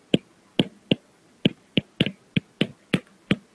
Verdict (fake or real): real